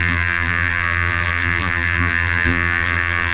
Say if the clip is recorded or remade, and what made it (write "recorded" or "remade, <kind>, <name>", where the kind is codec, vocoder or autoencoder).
remade, vocoder, BigVGAN v2